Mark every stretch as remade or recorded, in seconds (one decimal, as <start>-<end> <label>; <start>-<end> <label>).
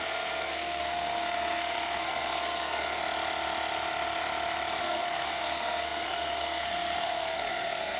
0.0-3.0 remade; 3.0-4.8 recorded; 4.8-8.0 remade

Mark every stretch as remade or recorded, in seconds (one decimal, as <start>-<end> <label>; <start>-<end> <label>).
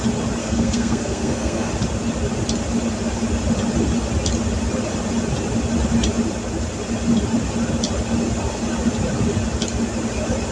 0.0-0.4 recorded; 0.4-1.7 remade; 1.7-10.5 recorded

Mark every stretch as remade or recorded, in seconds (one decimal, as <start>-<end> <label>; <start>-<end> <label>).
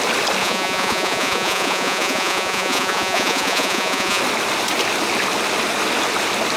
0.0-0.4 recorded; 0.4-4.2 remade; 4.2-6.6 recorded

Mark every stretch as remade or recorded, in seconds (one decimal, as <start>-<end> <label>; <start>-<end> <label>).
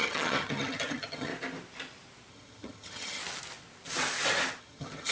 0.0-1.3 remade; 1.3-2.3 recorded; 2.3-3.2 remade; 3.2-4.6 recorded; 4.6-5.1 remade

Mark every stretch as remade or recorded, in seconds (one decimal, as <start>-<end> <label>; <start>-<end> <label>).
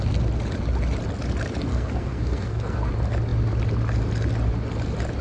0.0-1.7 recorded; 1.7-2.9 remade; 2.9-5.2 recorded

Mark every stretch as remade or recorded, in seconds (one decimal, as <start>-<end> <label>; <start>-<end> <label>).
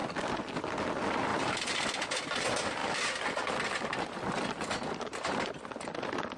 0.0-6.4 recorded